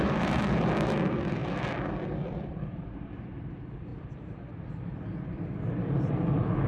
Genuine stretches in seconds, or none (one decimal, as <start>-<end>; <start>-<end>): 3.9-6.1